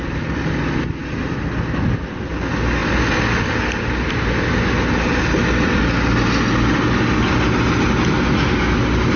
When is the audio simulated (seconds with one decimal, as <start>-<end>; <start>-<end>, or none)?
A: none